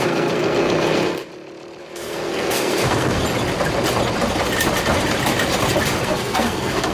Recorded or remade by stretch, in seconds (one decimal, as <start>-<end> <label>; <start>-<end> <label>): 0.0-1.3 remade; 1.3-1.8 recorded; 1.8-3.2 remade; 3.2-6.0 recorded; 6.0-6.9 remade